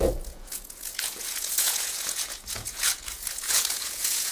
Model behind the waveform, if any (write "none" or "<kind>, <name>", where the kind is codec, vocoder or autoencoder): vocoder, Vocos